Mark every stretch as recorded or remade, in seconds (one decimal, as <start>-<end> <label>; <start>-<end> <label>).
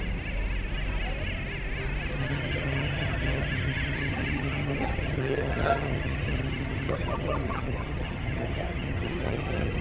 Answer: 0.0-2.2 recorded; 2.2-9.8 remade